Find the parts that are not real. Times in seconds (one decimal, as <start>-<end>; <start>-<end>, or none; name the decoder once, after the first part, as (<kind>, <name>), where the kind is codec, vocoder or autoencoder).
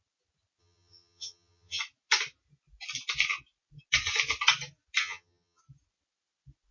0.6-1.8 (vocoder, HiFi-GAN); 5.0-5.6